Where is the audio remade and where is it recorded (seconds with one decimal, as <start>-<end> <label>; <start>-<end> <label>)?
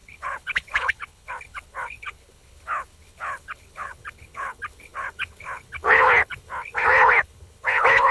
0.0-8.1 remade